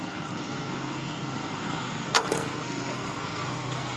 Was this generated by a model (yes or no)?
yes